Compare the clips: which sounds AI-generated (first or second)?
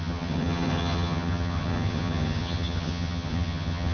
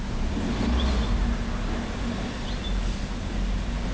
first